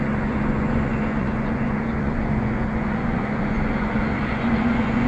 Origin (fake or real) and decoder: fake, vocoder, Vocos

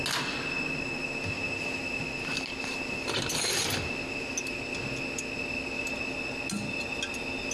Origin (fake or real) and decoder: real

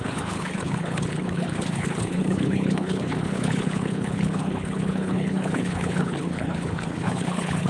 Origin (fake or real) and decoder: fake, codec, HILCodec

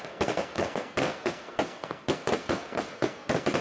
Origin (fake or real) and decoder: fake, codec, SNAC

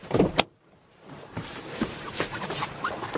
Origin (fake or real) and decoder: fake, vocoder, BigVGAN v2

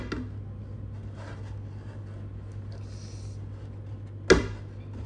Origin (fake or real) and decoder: real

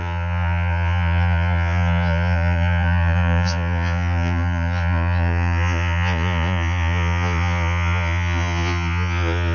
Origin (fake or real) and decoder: fake, vocoder, Vocos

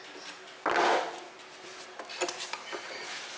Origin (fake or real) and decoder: real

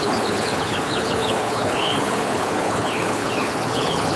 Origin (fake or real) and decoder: fake, codec, HILCodec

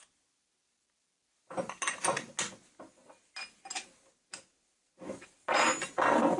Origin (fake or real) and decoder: real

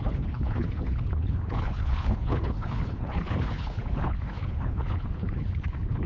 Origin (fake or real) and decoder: fake, codec, HILCodec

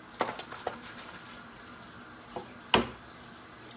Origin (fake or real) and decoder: real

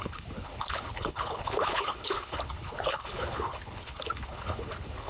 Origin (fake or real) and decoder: fake, codec, HILCodec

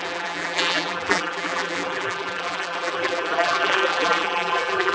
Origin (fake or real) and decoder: fake, vocoder, BigVGAN v2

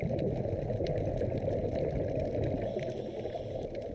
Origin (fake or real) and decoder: real